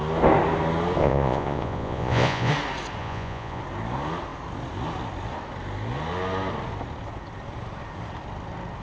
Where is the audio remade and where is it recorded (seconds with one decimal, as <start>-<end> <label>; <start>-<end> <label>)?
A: 0.0-1.0 recorded; 1.0-2.5 remade; 2.5-3.0 recorded; 3.0-3.6 remade; 3.6-8.8 recorded